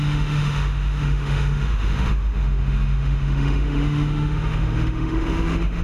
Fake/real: fake